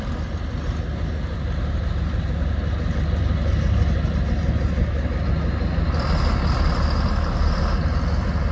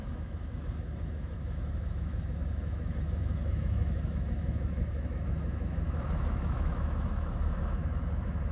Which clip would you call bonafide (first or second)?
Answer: first